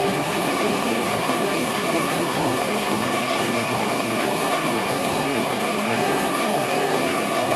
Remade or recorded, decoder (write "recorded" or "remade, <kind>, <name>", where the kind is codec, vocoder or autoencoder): remade, codec, SNAC